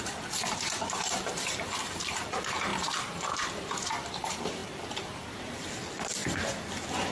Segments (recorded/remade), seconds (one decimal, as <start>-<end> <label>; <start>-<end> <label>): 0.0-6.2 remade; 6.2-7.1 recorded